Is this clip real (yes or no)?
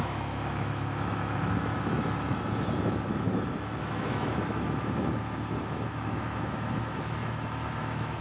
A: no